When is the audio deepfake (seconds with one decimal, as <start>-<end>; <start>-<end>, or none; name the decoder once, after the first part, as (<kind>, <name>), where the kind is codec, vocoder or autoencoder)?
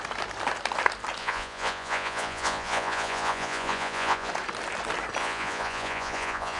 1.2-4.3 (vocoder, Vocos); 5.2-6.6